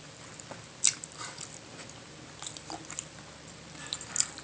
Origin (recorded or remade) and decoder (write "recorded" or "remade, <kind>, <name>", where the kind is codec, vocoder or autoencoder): remade, vocoder, BigVGAN v2